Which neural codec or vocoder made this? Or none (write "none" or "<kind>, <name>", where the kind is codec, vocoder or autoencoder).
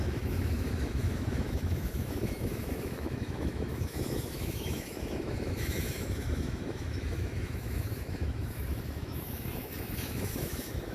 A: autoencoder, DAC-VAE